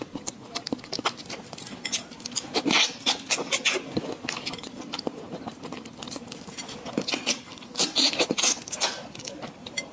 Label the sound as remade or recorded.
recorded